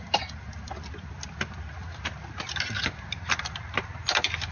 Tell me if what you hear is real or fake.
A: real